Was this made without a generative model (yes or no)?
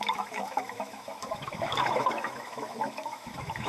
no